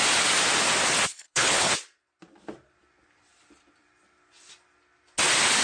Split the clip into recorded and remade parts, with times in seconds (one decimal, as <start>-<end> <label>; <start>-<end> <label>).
0.0-1.1 recorded; 1.1-1.7 remade; 1.7-5.6 recorded